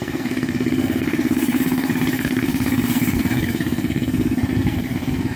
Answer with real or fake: fake